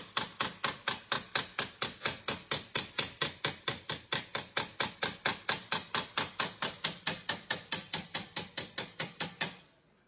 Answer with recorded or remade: recorded